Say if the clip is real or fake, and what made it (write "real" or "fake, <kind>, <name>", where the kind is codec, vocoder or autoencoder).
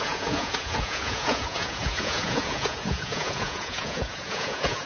fake, vocoder, Vocos